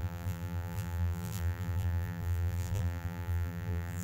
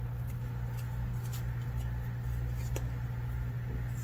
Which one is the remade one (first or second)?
first